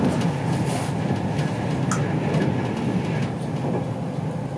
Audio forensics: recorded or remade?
recorded